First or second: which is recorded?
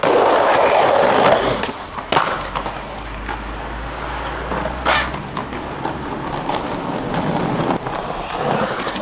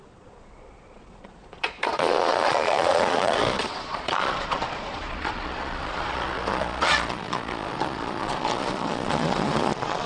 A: first